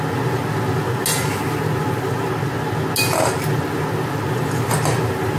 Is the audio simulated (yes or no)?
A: no